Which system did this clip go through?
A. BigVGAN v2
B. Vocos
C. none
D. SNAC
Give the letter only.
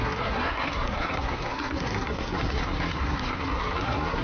D